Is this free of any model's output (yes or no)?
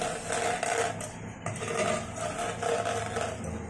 yes